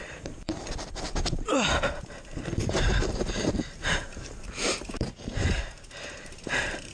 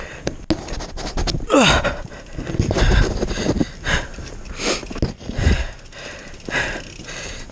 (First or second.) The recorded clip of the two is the second